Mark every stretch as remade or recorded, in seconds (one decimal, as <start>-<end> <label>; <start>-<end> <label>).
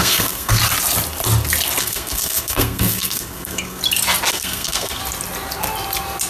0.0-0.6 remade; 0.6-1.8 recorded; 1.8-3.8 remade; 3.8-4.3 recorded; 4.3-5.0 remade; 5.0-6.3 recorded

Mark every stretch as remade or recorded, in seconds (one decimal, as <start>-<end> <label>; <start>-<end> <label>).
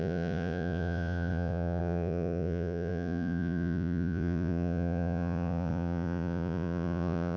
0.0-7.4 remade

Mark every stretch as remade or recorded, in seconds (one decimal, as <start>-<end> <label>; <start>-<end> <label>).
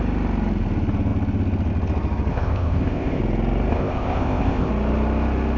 0.0-2.3 recorded; 2.3-3.2 remade; 3.2-3.7 recorded; 3.7-4.7 remade; 4.7-5.6 recorded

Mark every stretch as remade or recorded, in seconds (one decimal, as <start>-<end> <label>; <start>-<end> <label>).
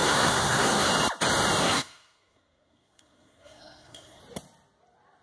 0.0-0.9 remade; 0.9-1.6 recorded; 1.6-4.2 remade; 4.2-5.2 recorded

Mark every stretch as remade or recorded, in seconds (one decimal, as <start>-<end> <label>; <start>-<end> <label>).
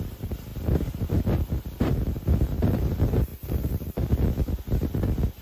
0.0-3.3 recorded; 3.3-3.9 remade; 3.9-5.4 recorded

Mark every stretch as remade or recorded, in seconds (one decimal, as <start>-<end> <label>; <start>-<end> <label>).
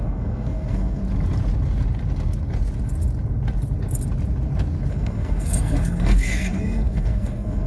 0.0-1.0 remade; 1.0-4.9 recorded; 4.9-7.7 remade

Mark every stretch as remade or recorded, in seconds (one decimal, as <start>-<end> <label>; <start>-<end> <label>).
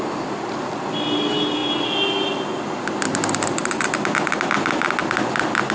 0.0-5.7 recorded